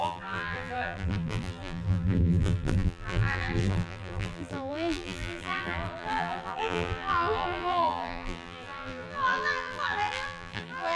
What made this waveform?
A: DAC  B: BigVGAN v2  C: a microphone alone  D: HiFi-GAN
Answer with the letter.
B